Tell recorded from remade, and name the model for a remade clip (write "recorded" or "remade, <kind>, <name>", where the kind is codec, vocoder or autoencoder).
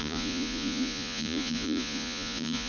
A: remade, vocoder, Vocos